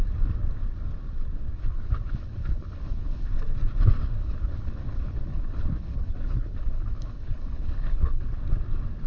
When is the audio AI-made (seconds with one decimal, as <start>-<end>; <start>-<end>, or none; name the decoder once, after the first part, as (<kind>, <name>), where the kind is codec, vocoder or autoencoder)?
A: 1.6-3.3 (codec, HILCodec); 4.2-8.3